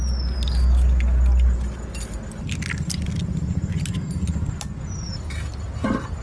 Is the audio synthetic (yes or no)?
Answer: no